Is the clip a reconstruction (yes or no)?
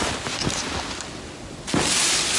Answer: no